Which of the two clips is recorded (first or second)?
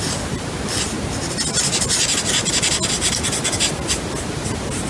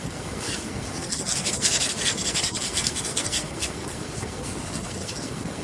first